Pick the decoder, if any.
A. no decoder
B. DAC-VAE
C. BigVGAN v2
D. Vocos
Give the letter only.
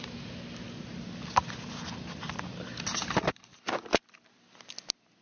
A